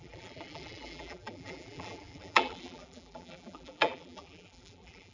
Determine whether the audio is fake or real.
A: fake